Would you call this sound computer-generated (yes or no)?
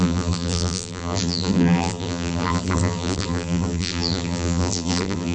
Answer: yes